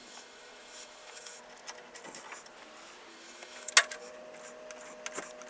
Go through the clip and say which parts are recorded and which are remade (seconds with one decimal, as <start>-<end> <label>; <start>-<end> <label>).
0.0-1.4 remade; 1.4-3.1 recorded; 3.1-3.7 remade; 3.7-5.5 recorded